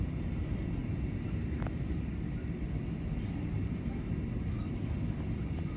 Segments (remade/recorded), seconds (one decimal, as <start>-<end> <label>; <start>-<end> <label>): 0.0-5.8 recorded